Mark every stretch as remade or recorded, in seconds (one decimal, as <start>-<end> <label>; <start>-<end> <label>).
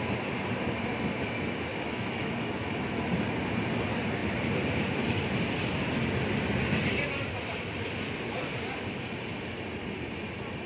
0.0-1.7 recorded; 1.7-3.0 remade; 3.0-10.7 recorded